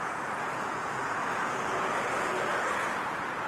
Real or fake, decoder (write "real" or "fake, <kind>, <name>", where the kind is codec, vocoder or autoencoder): fake, vocoder, Vocos